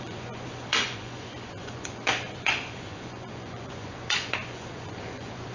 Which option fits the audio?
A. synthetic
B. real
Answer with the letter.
A